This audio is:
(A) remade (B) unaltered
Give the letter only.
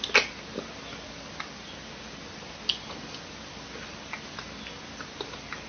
B